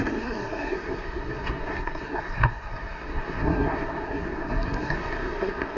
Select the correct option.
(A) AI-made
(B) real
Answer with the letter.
A